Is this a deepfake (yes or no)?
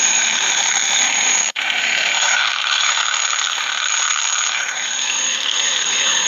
yes